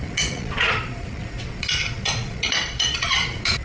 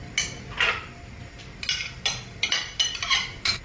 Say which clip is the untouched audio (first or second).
second